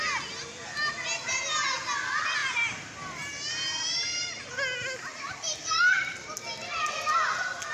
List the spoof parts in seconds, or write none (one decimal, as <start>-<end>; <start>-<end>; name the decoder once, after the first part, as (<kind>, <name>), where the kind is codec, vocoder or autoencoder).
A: 2.4-4.4 (vocoder, BigVGAN v2); 5.1-7.0